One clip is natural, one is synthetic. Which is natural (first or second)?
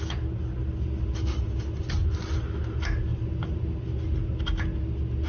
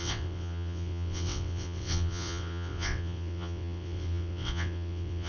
first